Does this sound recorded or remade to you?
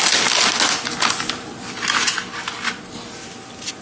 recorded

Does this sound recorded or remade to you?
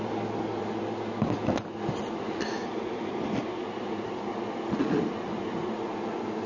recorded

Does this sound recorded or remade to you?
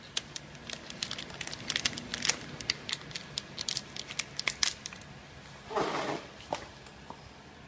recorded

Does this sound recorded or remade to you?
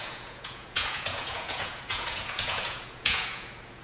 remade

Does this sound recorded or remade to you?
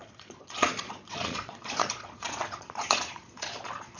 remade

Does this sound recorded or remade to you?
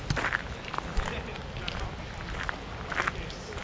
recorded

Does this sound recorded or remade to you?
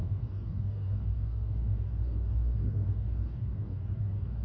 remade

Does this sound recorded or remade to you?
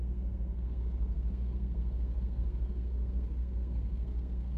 remade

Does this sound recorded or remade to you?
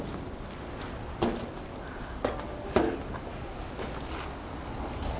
recorded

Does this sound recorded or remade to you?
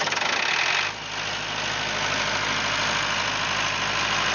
recorded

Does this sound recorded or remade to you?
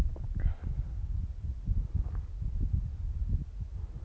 recorded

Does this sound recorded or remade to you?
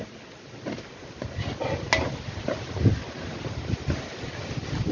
recorded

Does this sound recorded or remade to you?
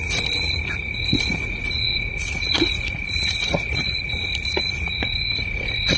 remade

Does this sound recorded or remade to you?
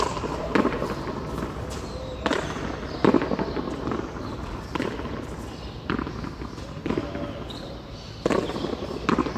recorded